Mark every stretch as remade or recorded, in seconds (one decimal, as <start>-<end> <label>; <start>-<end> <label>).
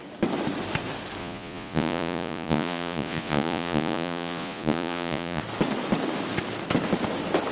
0.0-1.2 recorded; 1.2-5.4 remade; 5.4-7.5 recorded